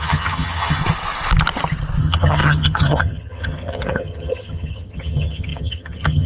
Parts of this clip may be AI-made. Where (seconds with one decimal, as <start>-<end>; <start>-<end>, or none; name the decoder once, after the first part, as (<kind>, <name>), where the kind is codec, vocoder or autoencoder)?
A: 0.0-0.8 (vocoder, HiFi-GAN); 2.0-6.3